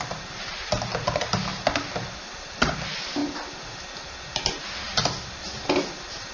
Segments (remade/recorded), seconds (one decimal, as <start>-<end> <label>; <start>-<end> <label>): 0.0-6.3 recorded